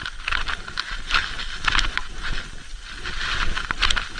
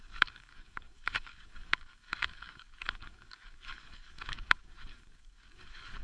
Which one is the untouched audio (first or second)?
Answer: first